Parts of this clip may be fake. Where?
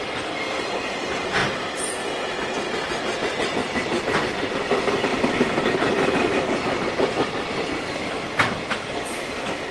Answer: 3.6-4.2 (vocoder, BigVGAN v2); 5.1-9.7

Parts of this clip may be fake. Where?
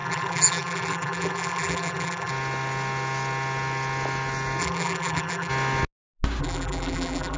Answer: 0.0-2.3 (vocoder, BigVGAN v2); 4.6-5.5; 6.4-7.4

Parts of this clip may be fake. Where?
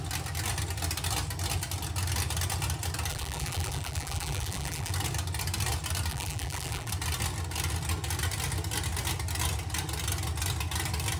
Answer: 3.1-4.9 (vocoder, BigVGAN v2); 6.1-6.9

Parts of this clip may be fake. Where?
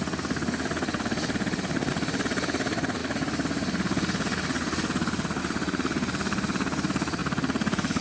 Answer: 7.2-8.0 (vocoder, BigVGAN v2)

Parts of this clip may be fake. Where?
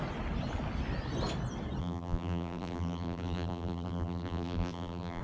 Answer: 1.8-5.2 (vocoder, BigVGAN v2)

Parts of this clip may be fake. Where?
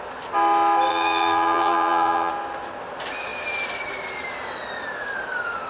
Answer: 0.9-2.3 (vocoder, BigVGAN v2)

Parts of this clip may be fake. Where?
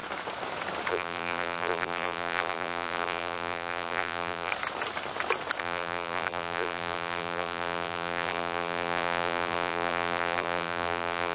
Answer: 0.9-4.5 (vocoder, BigVGAN v2); 5.6-11.3